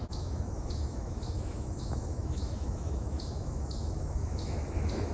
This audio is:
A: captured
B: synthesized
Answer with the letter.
B